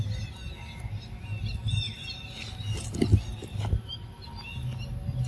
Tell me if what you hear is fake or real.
real